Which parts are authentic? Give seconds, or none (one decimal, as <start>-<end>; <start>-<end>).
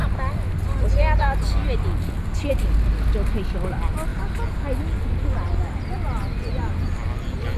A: 0.0-7.6